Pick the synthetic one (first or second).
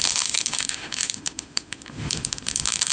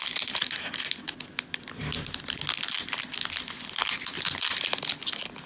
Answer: first